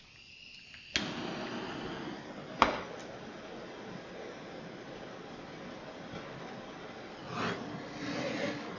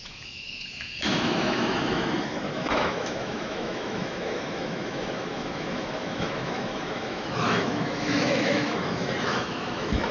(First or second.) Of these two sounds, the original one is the first